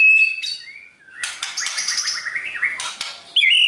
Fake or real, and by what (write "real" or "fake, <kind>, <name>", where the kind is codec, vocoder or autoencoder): real